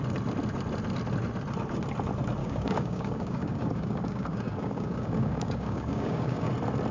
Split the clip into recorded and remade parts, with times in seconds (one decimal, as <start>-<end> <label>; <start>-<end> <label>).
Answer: 0.0-2.4 recorded; 2.4-6.5 remade; 6.5-6.9 recorded